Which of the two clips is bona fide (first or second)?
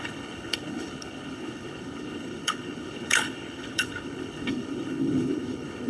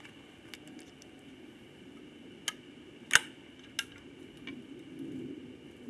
second